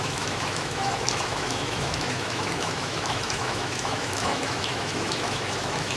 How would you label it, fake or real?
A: fake